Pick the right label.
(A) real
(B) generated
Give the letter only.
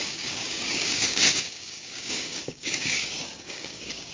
B